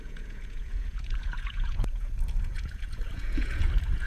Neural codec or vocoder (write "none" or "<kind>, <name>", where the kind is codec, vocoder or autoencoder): vocoder, Vocos